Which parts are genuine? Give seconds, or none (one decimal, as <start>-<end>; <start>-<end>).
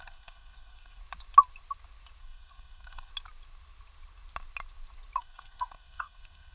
1.0-2.2; 3.1-5.2